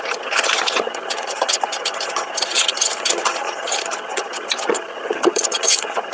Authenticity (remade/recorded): remade